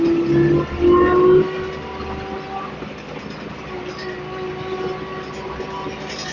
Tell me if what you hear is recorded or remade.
recorded